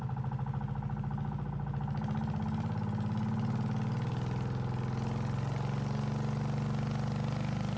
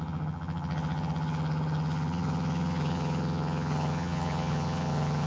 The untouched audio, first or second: first